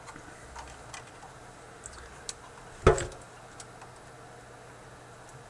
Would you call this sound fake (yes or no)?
no